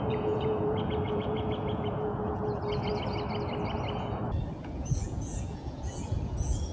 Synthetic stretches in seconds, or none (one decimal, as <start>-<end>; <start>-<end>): 0.0-2.9; 4.6-6.7